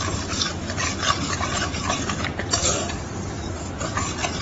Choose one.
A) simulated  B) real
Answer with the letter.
A